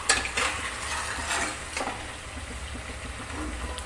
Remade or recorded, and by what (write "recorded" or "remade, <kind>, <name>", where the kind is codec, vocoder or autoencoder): recorded